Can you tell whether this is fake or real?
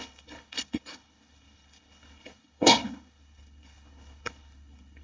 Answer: fake